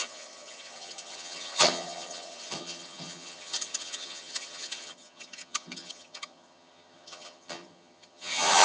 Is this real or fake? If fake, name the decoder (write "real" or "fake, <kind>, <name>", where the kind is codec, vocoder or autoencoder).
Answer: fake, vocoder, HiFi-GAN